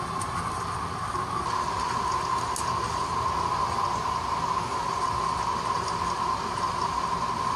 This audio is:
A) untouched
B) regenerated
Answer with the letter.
A